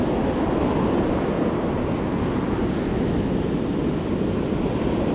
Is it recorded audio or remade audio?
recorded